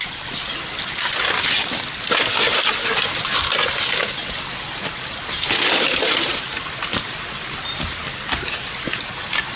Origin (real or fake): real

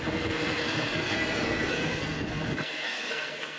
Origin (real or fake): fake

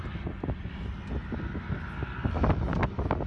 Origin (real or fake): real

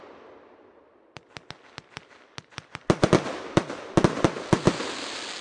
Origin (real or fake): real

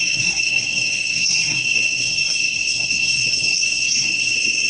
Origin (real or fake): fake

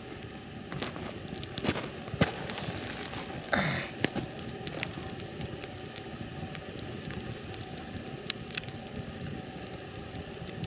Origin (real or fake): real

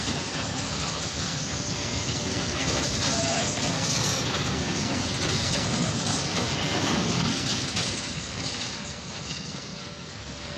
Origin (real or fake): fake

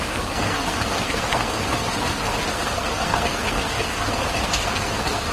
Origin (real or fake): fake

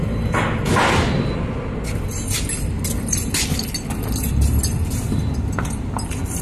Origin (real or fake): real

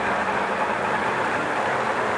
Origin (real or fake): real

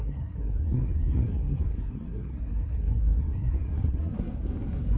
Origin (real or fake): fake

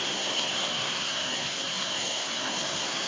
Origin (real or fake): fake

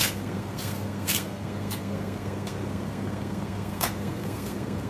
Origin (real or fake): fake